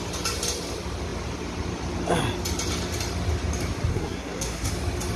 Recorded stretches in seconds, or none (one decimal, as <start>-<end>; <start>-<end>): 0.0-3.9; 4.7-5.2